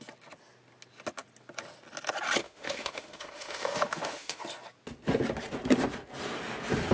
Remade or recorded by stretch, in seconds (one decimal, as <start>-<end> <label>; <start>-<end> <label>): 0.0-2.4 recorded; 2.4-4.4 remade; 4.4-6.9 recorded